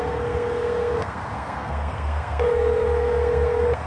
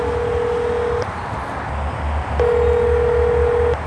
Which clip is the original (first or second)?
second